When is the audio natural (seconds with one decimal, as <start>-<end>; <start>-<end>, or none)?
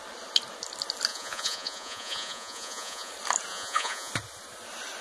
0.0-1.1; 3.1-3.5; 4.1-5.0